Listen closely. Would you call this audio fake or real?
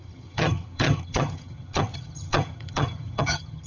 fake